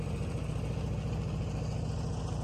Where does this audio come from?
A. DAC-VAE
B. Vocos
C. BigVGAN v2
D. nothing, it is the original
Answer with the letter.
D